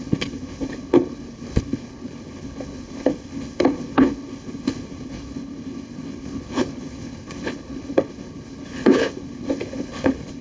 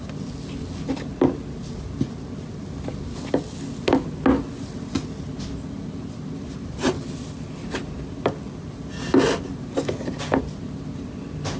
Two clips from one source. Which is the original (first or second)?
second